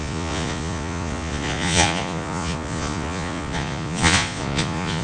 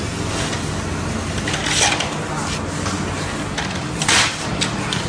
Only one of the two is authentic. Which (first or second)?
second